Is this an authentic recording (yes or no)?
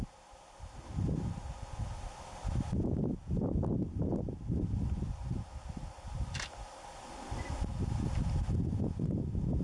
yes